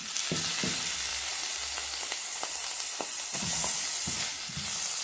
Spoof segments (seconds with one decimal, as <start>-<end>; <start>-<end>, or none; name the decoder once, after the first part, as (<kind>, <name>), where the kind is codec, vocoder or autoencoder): none

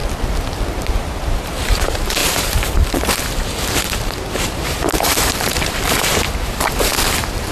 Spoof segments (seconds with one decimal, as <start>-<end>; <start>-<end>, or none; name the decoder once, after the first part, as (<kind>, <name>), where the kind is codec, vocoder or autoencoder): 0.9-7.5 (vocoder, BigVGAN v2)

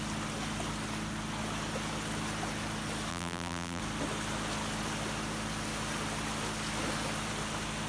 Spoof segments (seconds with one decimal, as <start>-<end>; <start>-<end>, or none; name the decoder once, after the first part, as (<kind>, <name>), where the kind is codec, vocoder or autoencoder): 3.1-3.8 (vocoder, BigVGAN v2)

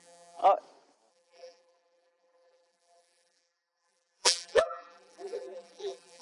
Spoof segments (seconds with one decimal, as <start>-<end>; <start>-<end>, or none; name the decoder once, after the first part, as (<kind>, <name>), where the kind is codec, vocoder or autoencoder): 0.0-0.4 (vocoder, BigVGAN v2); 1.1-6.2

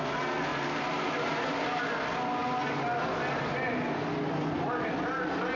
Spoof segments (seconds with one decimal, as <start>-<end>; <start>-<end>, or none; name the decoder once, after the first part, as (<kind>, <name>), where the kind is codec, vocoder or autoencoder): 0.5-1.8 (vocoder, BigVGAN v2)

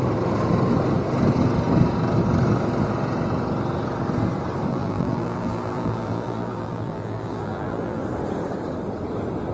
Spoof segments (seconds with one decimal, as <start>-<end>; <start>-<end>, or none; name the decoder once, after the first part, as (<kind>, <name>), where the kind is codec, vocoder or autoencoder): 4.7-8.0 (vocoder, BigVGAN v2)